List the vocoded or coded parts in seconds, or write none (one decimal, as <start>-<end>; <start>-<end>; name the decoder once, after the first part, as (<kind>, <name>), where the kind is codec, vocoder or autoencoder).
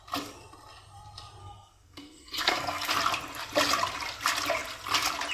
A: 1.4-2.9 (codec, SNAC)